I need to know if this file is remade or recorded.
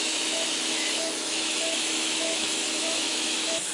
remade